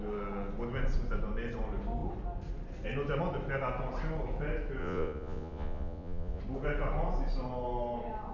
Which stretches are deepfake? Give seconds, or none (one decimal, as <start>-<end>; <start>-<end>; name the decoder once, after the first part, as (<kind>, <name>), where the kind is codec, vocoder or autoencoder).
4.8-6.4 (vocoder, Vocos)